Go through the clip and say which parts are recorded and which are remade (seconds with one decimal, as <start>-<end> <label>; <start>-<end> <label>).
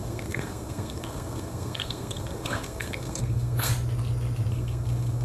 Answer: 0.0-3.7 remade; 3.7-4.5 recorded; 4.5-5.2 remade